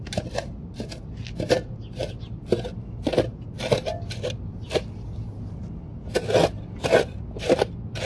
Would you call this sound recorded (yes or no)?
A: yes